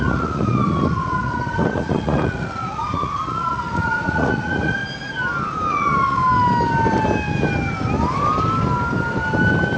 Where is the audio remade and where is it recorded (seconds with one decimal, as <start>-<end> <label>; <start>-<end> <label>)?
0.0-4.8 remade; 4.8-5.7 recorded; 5.7-6.2 remade; 6.2-9.8 recorded